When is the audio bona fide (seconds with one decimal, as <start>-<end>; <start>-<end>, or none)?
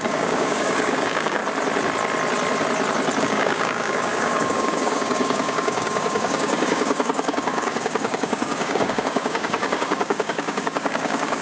1.4-3.2